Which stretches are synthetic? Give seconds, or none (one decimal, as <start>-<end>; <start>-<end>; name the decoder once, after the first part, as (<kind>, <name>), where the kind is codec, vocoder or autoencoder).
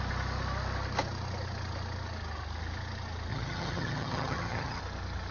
3.3-4.8 (vocoder, HiFi-GAN)